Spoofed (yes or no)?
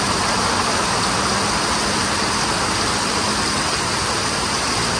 no